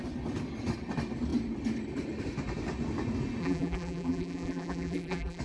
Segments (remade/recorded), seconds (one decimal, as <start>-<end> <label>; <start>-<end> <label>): 0.0-3.4 recorded; 3.4-5.4 remade